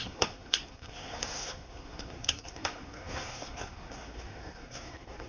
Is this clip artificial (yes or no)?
yes